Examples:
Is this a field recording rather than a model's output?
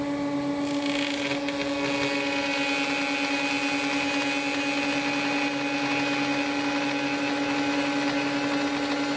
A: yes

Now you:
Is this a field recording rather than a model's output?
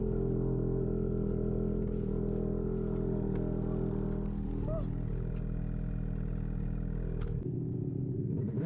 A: yes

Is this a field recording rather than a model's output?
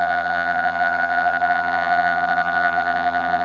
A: no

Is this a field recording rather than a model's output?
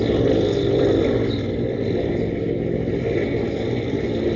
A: yes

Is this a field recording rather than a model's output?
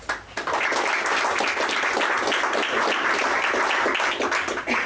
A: yes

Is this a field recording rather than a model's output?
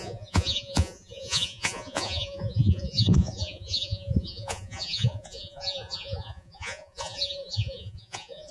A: no